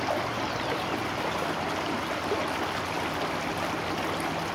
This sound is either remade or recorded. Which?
remade